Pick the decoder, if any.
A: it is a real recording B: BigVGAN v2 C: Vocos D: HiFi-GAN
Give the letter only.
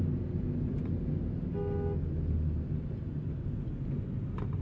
A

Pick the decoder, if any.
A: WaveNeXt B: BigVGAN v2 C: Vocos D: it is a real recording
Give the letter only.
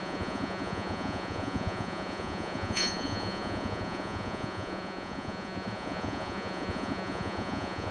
C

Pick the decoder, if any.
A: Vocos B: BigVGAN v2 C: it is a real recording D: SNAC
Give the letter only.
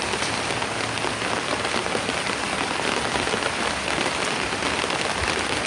C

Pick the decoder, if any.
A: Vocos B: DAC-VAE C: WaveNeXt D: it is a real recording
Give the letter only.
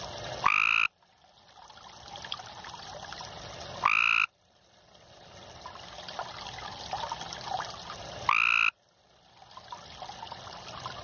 D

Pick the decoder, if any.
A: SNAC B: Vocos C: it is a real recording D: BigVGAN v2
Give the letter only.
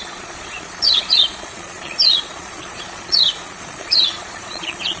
B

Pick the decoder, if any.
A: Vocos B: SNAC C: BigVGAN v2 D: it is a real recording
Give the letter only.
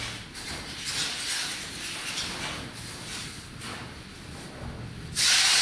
D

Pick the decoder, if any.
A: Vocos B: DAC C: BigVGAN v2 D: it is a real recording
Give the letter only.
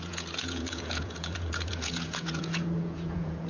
A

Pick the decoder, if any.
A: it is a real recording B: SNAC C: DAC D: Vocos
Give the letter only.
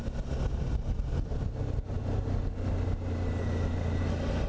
A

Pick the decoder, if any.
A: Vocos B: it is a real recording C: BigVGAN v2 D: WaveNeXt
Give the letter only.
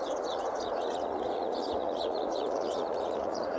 A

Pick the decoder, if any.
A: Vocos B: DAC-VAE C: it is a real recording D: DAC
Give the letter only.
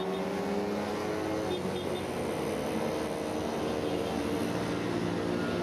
C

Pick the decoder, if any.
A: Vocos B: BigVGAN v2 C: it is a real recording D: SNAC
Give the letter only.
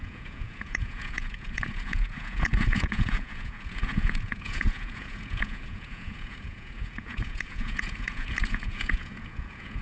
A